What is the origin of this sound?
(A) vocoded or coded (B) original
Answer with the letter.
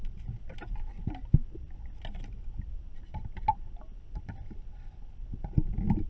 B